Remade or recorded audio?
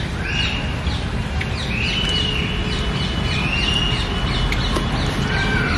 recorded